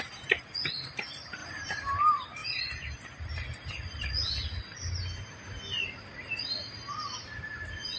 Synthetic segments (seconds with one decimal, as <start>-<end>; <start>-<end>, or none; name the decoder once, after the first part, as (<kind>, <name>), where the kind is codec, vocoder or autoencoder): none